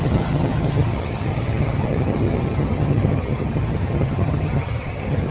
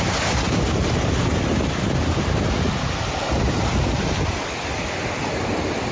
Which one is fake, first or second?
first